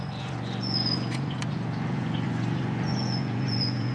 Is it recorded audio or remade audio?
remade